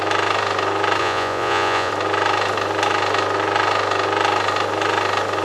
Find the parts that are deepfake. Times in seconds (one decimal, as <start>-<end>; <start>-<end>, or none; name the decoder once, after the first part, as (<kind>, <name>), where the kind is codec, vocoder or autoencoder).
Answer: 1.0-1.9 (vocoder, Vocos)